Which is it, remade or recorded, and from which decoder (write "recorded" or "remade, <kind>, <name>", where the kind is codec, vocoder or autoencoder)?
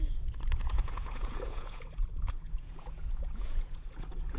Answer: remade, vocoder, Vocos